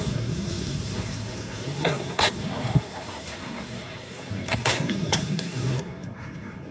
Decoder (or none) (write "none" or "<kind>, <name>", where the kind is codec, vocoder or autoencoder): codec, SNAC